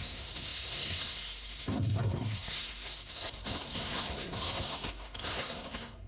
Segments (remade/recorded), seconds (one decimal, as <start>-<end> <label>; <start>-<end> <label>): 0.0-6.1 remade